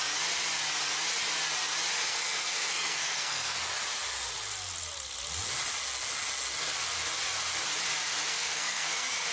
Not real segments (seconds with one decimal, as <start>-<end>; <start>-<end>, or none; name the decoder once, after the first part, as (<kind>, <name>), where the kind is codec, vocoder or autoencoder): 2.1-3.6 (codec, SNAC); 8.3-9.3